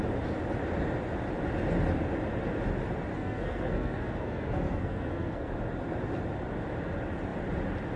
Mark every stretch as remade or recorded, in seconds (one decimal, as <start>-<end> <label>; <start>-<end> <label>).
0.0-3.1 recorded; 3.1-5.5 remade; 5.5-8.0 recorded